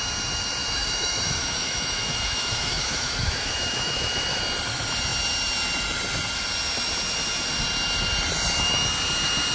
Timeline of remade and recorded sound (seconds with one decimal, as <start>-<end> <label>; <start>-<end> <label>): 0.0-0.6 recorded; 0.6-4.4 remade; 4.4-9.5 recorded